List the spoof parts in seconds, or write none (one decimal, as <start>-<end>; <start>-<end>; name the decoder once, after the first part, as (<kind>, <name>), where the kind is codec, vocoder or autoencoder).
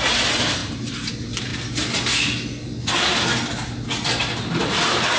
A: 0.0-1.5 (vocoder, BigVGAN v2); 4.6-5.2